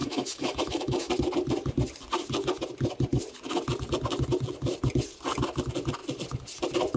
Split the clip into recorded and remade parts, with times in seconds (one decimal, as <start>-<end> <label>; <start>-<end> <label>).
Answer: 0.0-1.1 remade; 1.1-7.0 recorded